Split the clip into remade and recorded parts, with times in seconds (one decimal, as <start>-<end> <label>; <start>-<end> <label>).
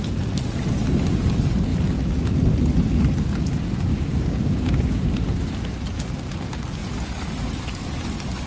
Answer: 0.0-3.9 recorded; 3.9-5.1 remade; 5.1-8.5 recorded